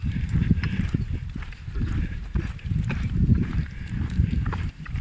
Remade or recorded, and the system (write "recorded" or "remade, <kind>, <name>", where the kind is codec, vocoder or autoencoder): remade, vocoder, BigVGAN v2